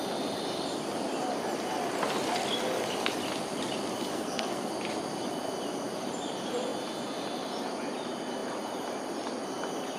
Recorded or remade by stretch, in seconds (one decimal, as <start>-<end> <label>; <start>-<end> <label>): 0.0-4.1 recorded; 4.1-4.7 remade; 4.7-10.0 recorded